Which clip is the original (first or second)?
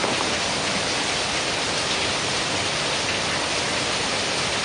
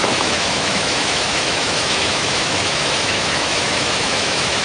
first